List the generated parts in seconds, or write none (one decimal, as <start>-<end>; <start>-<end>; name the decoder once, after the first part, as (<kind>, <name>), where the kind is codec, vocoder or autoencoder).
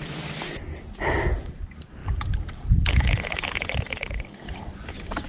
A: 2.0-5.3 (vocoder, BigVGAN v2)